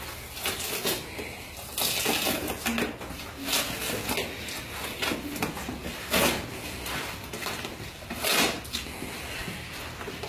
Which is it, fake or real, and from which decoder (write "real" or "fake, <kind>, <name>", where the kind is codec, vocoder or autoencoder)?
real